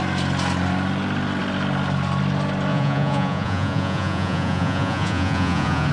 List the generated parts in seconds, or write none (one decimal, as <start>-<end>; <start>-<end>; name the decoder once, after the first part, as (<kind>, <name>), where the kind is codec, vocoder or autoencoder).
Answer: 2.7-5.9 (vocoder, Vocos)